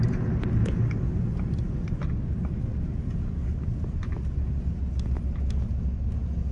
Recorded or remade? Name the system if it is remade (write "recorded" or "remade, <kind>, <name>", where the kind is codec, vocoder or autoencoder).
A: recorded